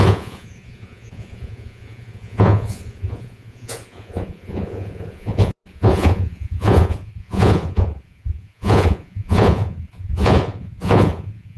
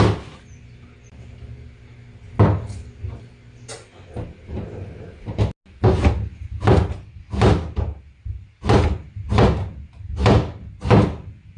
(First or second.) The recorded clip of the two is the second